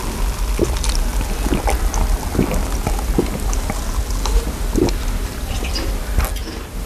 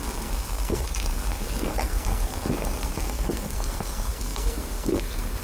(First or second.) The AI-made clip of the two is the second